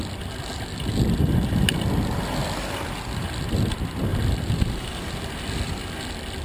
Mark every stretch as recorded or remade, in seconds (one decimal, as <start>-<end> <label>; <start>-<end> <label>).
0.0-2.4 recorded; 2.4-2.9 remade; 2.9-4.1 recorded; 4.1-5.8 remade; 5.8-6.4 recorded